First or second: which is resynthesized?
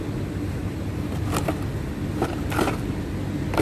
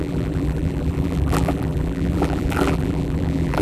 second